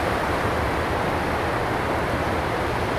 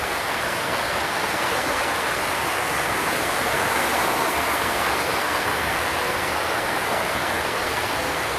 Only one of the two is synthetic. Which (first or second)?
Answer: second